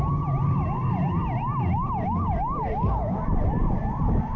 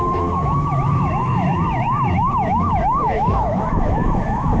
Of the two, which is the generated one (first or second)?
second